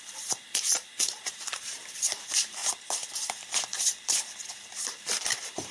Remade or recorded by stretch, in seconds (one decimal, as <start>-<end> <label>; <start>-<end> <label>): 0.0-2.6 remade; 2.6-5.1 recorded; 5.1-5.7 remade